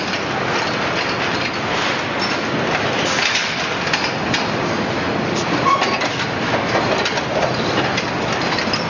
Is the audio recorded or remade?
recorded